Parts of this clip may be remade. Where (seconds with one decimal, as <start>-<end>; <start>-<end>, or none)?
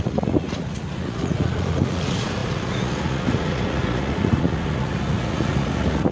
0.0-6.1